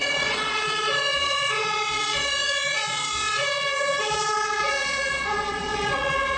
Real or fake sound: fake